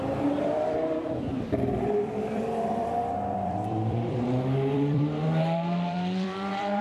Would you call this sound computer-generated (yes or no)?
yes